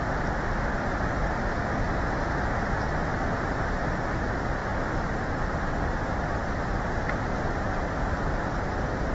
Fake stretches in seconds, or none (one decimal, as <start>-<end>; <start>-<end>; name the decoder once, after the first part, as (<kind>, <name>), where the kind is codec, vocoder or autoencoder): 0.0-4.6 (vocoder, BigVGAN v2); 5.1-9.1